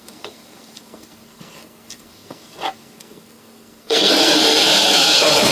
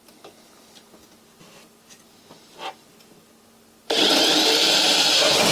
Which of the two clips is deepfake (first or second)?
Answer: first